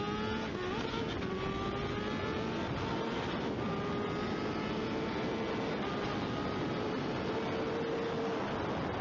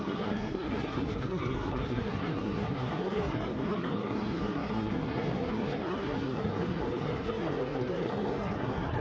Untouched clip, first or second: first